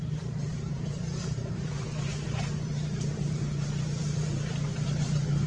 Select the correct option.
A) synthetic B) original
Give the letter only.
A